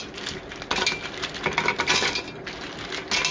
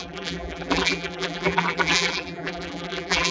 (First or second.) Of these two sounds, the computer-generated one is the second